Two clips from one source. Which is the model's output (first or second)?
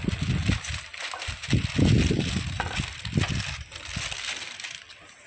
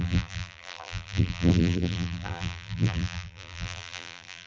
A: second